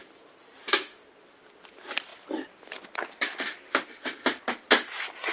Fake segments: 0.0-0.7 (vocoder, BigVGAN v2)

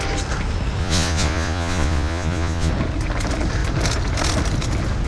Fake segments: 0.8-2.7 (vocoder, Vocos)